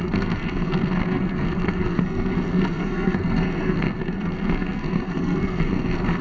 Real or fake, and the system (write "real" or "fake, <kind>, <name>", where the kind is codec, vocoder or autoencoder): fake, codec, SNAC